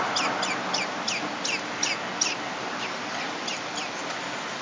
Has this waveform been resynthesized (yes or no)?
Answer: no